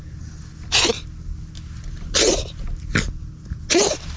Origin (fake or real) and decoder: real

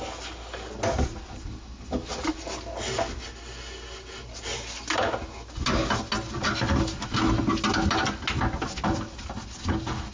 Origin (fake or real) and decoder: real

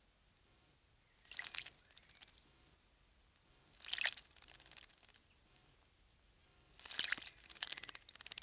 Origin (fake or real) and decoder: real